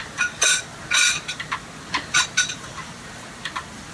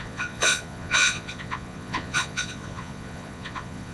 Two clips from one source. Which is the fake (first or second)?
second